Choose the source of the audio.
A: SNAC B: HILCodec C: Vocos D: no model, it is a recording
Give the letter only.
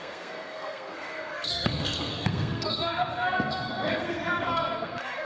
A